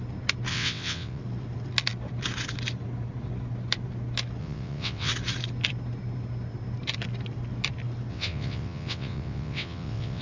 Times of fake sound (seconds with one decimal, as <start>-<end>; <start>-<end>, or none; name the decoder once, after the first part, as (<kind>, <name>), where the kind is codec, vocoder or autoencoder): 0.5-1.2 (vocoder, WaveNeXt); 4.4-5.1; 8.1-10.2

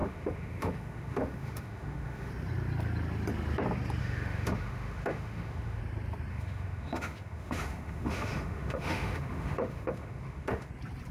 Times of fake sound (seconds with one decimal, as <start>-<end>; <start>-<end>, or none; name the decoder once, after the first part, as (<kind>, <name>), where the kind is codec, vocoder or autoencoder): 0.0-2.3 (autoencoder, DAC-VAE); 4.0-5.8; 6.3-10.7

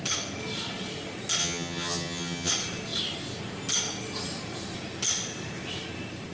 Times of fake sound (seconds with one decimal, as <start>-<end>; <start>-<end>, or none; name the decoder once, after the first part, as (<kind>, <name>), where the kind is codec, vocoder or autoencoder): 1.4-2.5 (vocoder, HiFi-GAN)

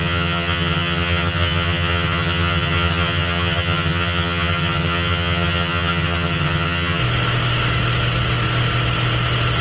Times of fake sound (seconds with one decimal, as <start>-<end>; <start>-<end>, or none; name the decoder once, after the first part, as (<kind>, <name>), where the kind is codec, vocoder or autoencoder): 0.0-7.0 (vocoder, HiFi-GAN)

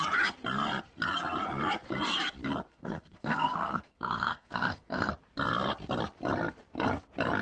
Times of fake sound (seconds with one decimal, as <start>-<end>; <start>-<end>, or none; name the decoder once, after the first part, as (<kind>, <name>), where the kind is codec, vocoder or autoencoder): 2.7-5.1 (codec, SNAC)

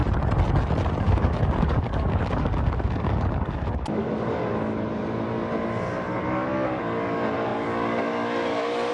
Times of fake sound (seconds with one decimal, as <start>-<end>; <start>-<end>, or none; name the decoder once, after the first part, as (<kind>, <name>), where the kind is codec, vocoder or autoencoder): 1.0-4.4 (codec, DAC); 6.2-8.9

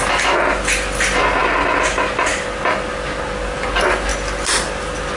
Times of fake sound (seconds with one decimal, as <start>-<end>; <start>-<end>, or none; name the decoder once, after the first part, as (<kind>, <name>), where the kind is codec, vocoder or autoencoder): none

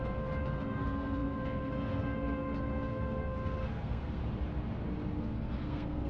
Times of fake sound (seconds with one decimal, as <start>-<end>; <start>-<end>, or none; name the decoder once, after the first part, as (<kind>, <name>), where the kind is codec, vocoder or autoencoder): 0.0-4.2 (codec, SNAC); 5.1-6.1